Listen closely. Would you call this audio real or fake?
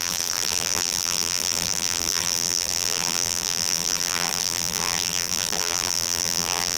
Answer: fake